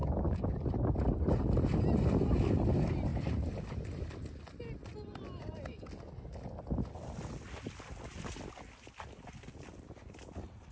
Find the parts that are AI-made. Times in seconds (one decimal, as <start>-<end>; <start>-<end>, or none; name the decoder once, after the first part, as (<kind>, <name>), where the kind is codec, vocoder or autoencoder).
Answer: none